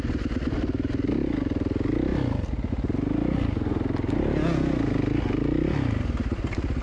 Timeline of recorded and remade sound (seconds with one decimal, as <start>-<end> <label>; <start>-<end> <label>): 0.0-6.8 recorded